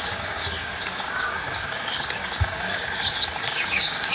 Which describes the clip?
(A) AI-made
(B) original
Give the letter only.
A